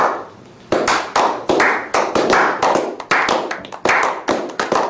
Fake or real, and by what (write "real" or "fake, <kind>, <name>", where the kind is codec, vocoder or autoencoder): real